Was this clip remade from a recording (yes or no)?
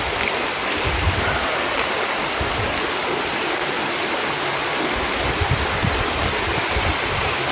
no